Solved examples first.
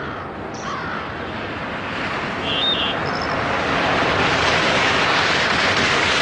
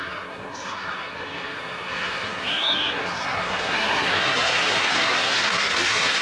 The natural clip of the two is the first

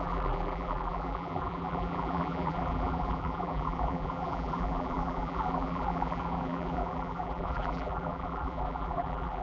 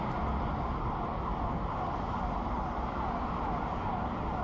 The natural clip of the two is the second